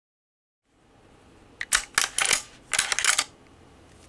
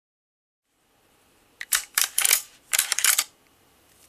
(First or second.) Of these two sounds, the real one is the first